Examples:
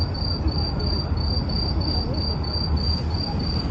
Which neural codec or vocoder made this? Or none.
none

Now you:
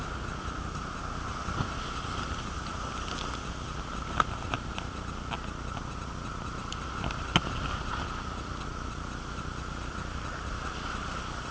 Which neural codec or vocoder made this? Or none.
none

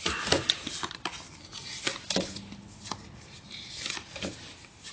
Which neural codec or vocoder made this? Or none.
none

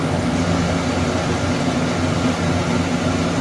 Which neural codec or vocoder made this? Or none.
none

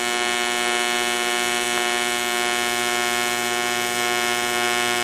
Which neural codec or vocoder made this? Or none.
none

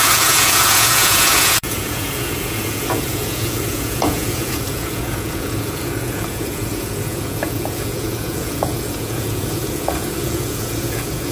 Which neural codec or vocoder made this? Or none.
vocoder, Vocos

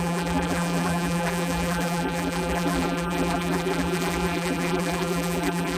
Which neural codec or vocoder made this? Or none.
vocoder, BigVGAN v2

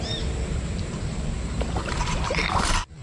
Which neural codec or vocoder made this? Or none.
none